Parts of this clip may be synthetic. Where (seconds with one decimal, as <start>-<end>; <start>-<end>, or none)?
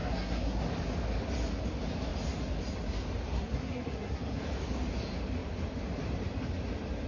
0.0-0.6; 3.3-4.4